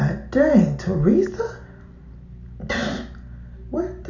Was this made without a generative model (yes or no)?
yes